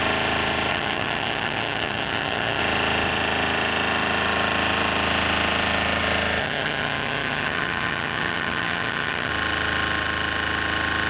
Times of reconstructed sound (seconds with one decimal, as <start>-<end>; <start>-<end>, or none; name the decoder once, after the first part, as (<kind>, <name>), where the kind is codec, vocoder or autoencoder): 0.7-2.6 (vocoder, HiFi-GAN); 6.4-9.3